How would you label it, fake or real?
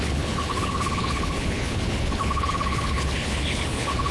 fake